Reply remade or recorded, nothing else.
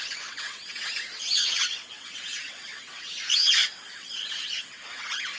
remade